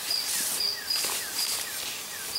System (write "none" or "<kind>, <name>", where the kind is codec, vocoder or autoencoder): none